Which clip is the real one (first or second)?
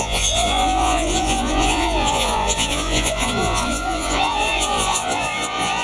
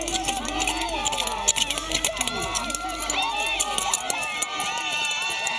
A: second